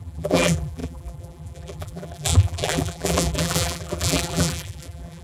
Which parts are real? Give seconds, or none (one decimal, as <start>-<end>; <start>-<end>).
none